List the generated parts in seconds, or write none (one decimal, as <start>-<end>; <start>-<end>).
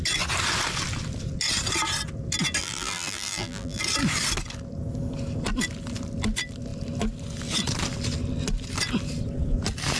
2.6-3.8